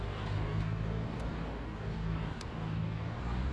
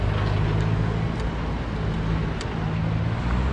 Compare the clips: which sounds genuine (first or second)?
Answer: second